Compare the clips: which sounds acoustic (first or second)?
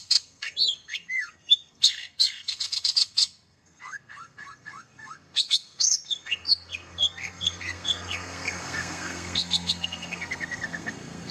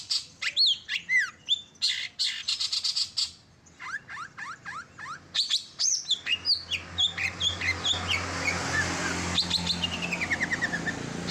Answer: second